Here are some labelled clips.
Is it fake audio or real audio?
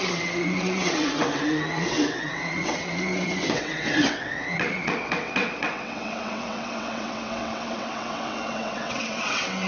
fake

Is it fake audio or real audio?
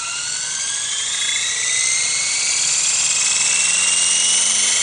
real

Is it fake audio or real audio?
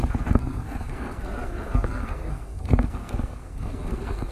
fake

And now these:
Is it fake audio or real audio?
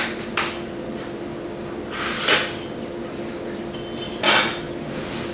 real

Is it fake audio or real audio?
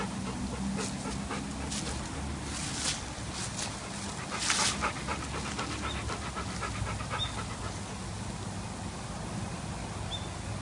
real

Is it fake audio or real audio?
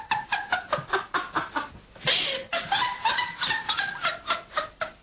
real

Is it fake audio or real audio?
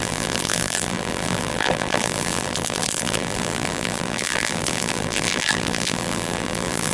fake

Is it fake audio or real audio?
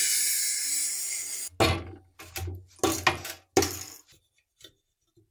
real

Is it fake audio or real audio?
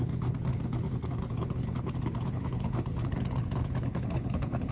fake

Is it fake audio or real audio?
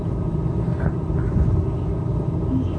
fake